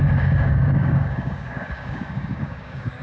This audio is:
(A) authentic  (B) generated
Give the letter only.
B